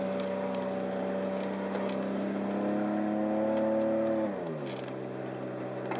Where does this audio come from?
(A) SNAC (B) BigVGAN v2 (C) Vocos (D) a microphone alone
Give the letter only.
D